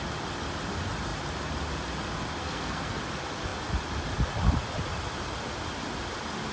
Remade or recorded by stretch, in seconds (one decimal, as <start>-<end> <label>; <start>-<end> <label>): 0.0-2.4 recorded; 2.4-3.0 remade; 3.0-6.5 recorded